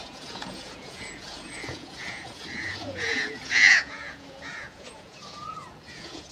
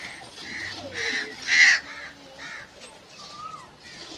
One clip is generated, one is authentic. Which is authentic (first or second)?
second